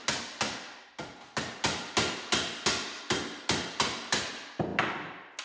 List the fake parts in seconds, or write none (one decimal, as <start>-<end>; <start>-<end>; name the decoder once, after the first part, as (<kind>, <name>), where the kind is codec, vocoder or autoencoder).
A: none